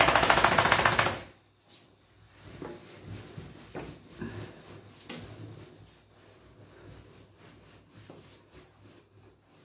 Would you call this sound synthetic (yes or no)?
no